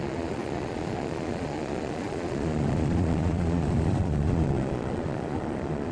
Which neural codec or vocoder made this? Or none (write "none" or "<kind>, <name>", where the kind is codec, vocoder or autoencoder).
vocoder, Vocos